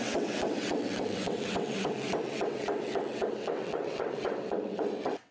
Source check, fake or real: fake